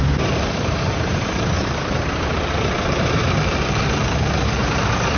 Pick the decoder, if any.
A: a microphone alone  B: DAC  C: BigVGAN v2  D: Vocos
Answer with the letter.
C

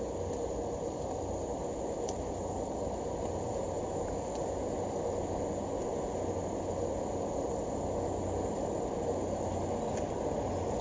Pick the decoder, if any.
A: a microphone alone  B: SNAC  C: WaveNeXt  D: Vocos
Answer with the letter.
A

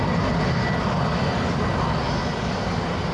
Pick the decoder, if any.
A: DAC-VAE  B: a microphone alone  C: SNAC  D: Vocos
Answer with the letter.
B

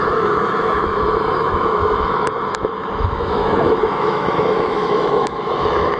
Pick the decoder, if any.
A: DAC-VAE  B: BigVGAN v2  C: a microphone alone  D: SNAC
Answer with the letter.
A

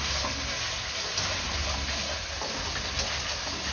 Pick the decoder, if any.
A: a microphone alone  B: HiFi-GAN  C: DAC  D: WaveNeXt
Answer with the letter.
A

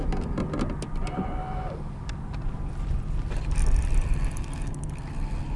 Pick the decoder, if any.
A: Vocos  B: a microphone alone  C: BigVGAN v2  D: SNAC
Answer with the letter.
B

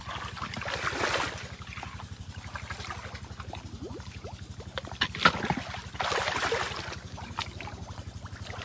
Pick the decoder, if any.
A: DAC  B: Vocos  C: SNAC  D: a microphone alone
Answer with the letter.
D